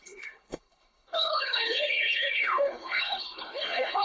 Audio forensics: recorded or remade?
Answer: remade